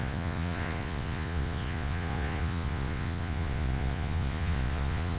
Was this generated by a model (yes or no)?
yes